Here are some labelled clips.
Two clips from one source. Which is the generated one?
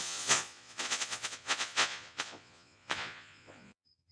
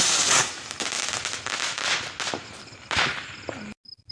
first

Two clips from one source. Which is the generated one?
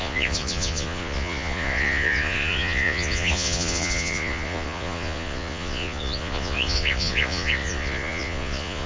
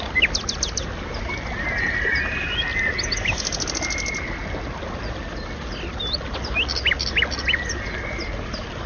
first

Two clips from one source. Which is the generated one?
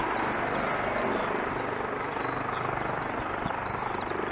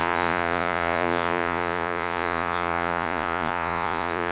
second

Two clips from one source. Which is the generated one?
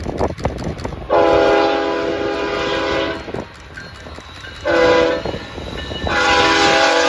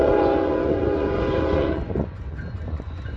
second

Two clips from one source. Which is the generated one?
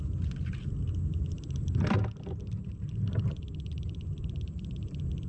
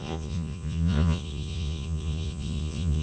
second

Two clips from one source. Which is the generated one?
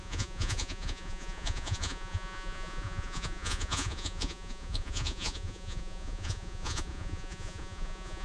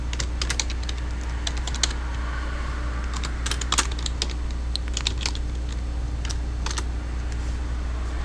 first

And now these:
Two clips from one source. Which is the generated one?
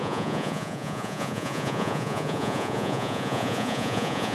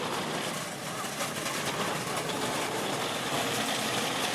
first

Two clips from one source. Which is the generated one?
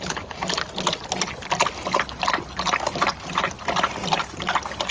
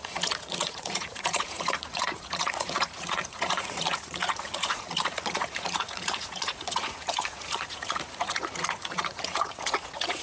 second